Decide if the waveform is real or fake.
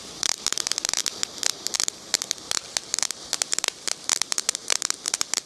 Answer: fake